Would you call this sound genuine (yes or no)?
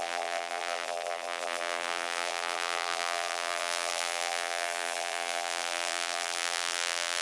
no